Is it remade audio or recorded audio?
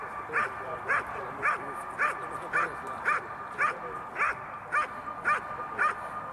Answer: recorded